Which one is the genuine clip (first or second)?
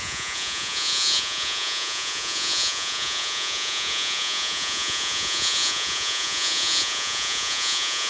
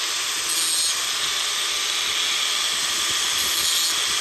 second